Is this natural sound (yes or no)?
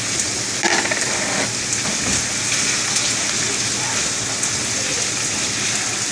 yes